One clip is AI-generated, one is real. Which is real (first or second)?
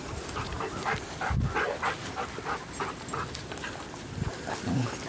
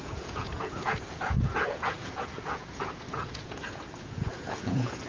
first